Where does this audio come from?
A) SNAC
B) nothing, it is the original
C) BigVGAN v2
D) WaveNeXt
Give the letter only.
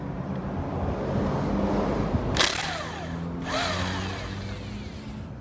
B